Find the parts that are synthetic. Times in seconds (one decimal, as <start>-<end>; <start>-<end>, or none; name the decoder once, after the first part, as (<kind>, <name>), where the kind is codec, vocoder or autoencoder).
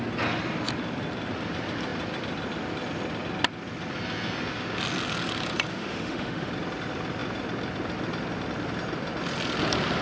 5.7-6.5 (autoencoder, DAC-VAE)